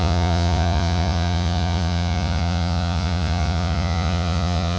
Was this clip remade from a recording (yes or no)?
yes